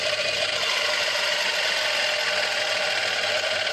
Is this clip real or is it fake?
real